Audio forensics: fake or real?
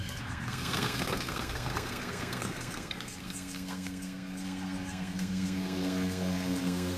fake